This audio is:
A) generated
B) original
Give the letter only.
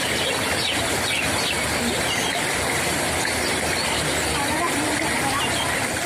B